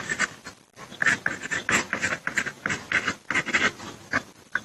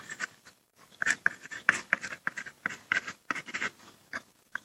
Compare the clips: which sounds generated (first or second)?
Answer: second